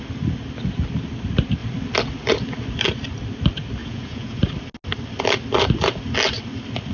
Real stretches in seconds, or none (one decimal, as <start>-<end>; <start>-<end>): 0.0-3.8; 4.4-6.9